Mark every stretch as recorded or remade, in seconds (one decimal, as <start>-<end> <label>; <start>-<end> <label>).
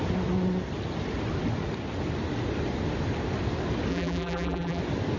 0.0-3.9 recorded; 3.9-4.8 remade; 4.8-5.2 recorded